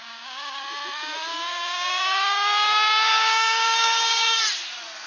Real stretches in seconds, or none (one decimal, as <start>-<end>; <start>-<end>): 0.6-1.3; 4.4-5.1